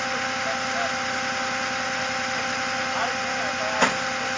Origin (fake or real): real